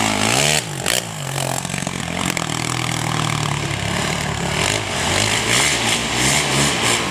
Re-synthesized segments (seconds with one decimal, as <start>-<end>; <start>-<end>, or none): 1.1-2.0